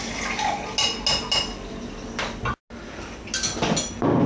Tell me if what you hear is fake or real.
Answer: real